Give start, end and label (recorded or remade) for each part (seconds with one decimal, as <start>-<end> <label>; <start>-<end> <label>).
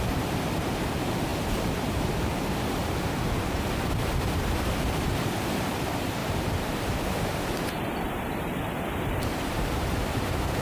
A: 0.0-6.2 remade; 6.2-8.9 recorded; 8.9-10.6 remade